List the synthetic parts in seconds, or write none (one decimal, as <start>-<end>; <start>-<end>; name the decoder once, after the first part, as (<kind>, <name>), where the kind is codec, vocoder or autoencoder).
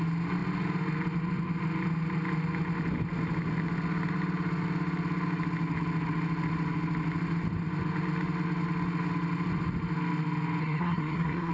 10.6-11.5 (codec, SNAC)